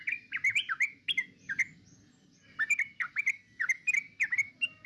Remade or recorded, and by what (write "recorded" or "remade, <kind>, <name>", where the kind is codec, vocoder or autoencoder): recorded